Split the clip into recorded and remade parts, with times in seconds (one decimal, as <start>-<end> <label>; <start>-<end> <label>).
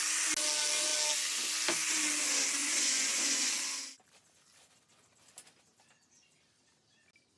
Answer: 0.0-2.6 recorded; 2.6-3.5 remade; 3.5-7.4 recorded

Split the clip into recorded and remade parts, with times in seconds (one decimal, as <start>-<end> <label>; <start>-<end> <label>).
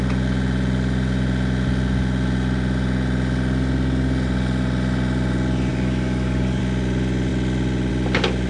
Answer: 0.0-5.7 recorded; 5.7-6.6 remade; 6.6-8.5 recorded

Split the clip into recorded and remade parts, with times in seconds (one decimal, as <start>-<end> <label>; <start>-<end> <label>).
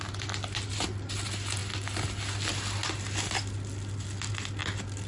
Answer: 0.0-5.1 recorded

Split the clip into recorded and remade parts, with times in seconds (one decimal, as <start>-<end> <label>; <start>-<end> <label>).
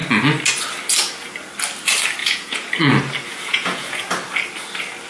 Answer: 0.0-2.2 recorded; 2.2-2.7 remade; 2.7-3.3 recorded; 3.3-4.1 remade; 4.1-5.1 recorded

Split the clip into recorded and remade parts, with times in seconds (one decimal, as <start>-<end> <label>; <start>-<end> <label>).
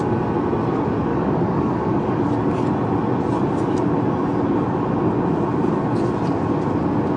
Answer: 0.0-1.1 recorded; 1.1-2.3 remade; 2.3-7.2 recorded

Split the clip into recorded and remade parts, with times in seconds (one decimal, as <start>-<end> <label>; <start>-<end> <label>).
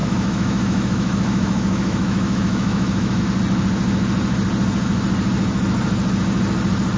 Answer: 0.0-3.2 remade; 3.2-7.0 recorded